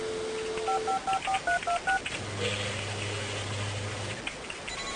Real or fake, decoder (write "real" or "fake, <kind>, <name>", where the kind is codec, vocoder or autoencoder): real